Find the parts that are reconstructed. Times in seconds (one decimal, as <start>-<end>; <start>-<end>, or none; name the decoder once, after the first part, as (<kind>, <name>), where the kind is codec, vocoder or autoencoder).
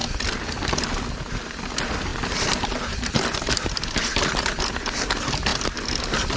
1.6-2.1 (vocoder, BigVGAN v2); 4.6-6.4